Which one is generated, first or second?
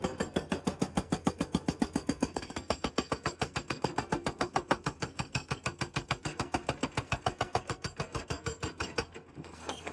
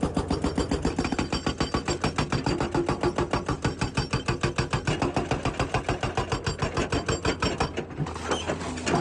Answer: first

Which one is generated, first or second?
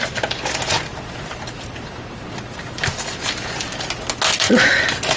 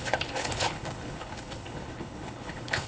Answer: second